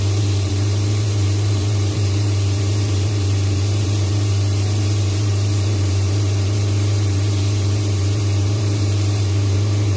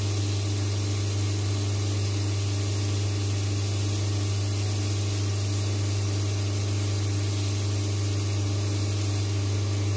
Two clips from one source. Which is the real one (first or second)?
second